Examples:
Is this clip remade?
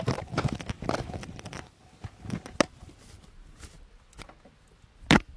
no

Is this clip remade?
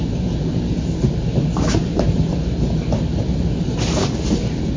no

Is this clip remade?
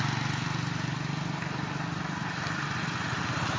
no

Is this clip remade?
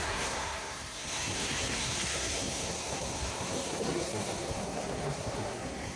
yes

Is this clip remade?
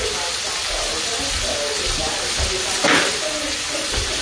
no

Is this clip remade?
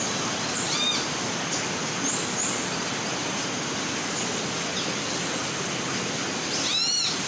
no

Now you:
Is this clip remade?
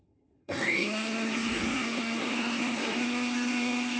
yes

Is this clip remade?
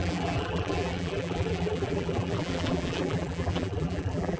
yes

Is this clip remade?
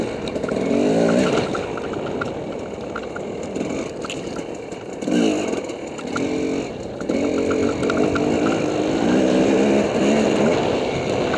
no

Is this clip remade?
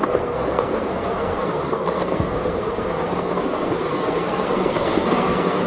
yes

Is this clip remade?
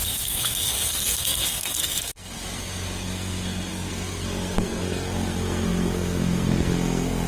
yes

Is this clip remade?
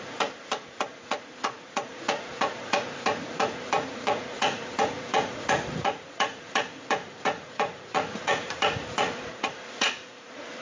yes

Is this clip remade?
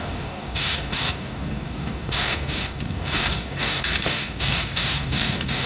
yes